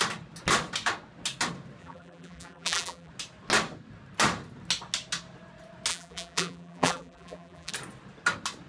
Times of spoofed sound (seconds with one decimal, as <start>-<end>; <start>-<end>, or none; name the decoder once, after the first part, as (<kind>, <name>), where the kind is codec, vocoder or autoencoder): 1.8-3.1 (vocoder, BigVGAN v2); 5.9-7.7

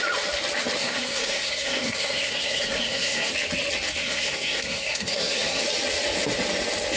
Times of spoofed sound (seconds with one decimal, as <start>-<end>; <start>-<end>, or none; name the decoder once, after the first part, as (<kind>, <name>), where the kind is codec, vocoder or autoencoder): 0.8-3.3 (codec, SNAC); 4.0-5.6

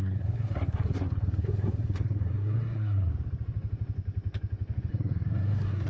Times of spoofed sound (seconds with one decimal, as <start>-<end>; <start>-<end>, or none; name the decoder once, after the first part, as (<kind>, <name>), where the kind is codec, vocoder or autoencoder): 0.0-3.1 (codec, SNAC); 4.9-5.9

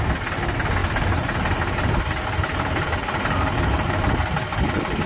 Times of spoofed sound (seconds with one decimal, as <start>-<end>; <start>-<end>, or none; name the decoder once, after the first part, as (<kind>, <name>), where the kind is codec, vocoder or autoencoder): 0.8-3.9 (vocoder, BigVGAN v2)

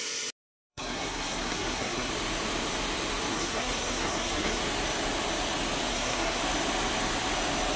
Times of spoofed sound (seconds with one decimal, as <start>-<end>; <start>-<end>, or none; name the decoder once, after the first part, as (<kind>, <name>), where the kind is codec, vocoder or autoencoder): 0.7-2.1 (codec, SNAC); 3.3-4.6; 5.9-6.4